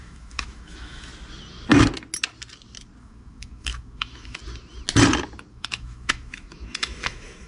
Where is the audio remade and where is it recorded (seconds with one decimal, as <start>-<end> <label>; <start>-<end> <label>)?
0.0-1.1 remade; 1.1-3.0 recorded; 3.0-4.4 remade; 4.4-5.5 recorded; 5.5-7.5 remade